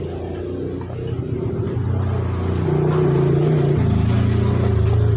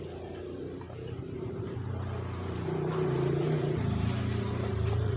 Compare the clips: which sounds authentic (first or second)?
first